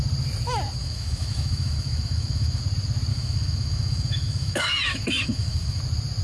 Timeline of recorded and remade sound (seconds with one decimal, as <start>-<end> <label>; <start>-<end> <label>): 0.0-0.8 recorded; 0.8-2.6 remade; 2.6-3.1 recorded; 3.1-5.8 remade; 5.8-6.2 recorded